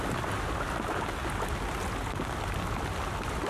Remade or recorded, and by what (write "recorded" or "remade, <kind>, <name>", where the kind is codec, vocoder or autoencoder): recorded